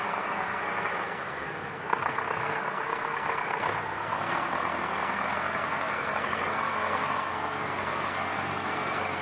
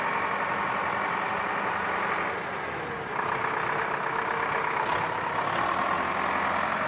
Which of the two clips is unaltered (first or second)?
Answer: second